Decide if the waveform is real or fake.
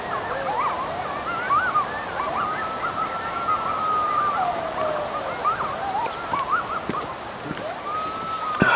real